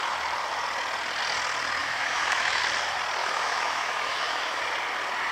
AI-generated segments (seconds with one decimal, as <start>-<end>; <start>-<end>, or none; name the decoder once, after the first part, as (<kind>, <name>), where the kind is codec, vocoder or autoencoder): 1.8-2.6 (autoencoder, DAC-VAE); 3.2-4.6